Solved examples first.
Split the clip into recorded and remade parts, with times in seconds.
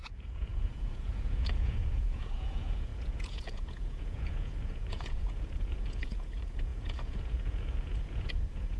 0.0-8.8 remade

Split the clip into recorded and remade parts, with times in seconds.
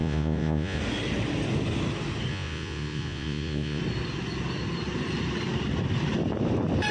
0.0-0.8 remade; 0.8-2.3 recorded; 2.3-3.8 remade; 3.8-6.9 recorded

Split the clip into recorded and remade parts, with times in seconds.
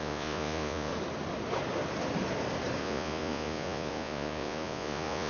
0.0-0.9 remade; 0.9-2.8 recorded; 2.8-5.3 remade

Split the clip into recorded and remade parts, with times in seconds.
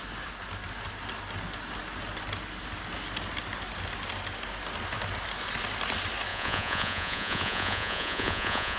0.0-6.3 recorded; 6.3-8.8 remade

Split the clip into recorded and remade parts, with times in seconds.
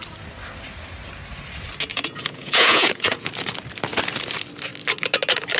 0.0-1.9 recorded; 1.9-3.3 remade; 3.3-5.6 recorded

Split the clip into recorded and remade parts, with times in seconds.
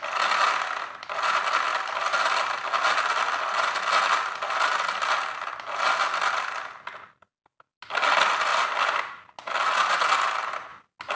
0.0-11.2 recorded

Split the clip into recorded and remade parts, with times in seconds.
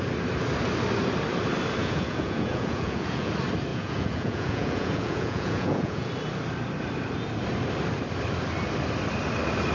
0.0-1.8 recorded; 1.8-3.3 remade; 3.3-3.7 recorded; 3.7-6.1 remade; 6.1-9.7 recorded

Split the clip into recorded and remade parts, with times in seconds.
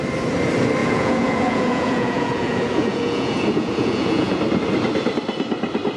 0.0-0.8 recorded; 0.8-4.4 remade; 4.4-6.0 recorded